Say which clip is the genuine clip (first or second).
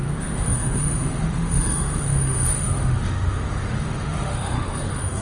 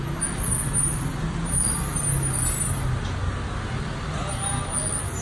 second